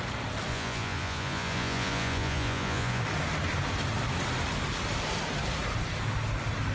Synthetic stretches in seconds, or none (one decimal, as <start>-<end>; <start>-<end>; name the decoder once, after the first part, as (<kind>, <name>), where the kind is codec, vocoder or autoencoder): 0.5-3.0 (vocoder, Vocos)